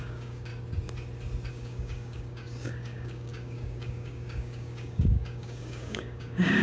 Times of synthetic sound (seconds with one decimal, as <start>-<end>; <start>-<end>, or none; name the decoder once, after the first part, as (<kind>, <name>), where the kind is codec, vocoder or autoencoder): 0.0-0.5 (codec, DAC); 1.5-6.6